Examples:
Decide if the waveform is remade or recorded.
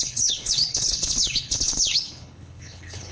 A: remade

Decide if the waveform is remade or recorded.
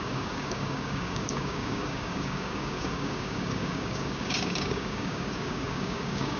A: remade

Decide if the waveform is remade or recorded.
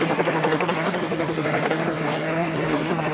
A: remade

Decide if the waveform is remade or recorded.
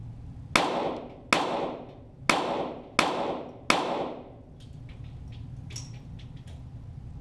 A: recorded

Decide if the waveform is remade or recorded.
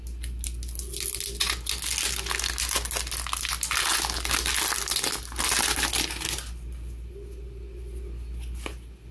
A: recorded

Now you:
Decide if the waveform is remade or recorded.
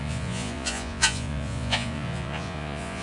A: remade